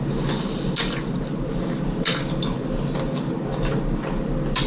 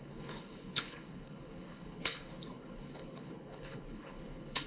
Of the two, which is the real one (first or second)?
first